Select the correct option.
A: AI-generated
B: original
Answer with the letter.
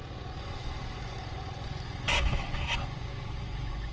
A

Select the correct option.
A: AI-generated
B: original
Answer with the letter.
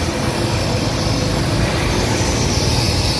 B